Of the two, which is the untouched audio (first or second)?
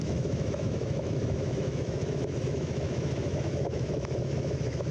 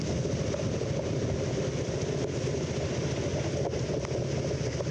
second